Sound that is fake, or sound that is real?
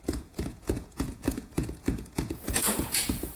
fake